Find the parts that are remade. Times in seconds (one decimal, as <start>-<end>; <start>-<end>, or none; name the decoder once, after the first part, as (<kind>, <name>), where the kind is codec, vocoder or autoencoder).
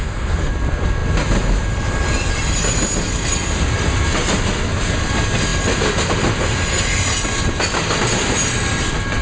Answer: 0.0-0.5 (codec, SNAC)